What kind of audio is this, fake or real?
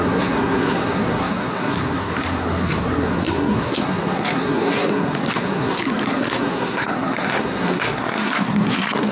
fake